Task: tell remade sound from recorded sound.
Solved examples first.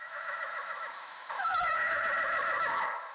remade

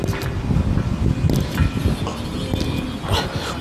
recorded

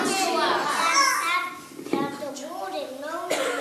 recorded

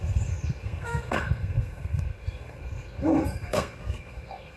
remade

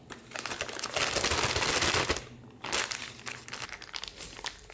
recorded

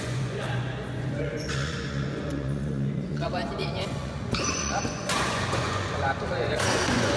remade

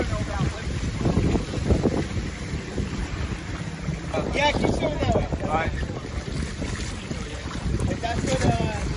remade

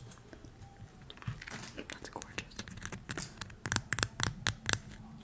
recorded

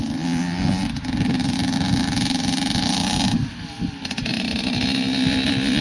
recorded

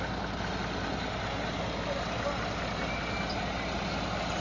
recorded